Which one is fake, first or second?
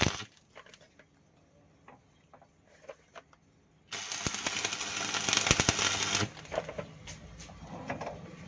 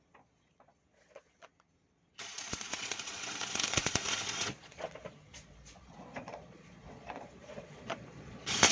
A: second